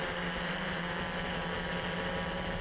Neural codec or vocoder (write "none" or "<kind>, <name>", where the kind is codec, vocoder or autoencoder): none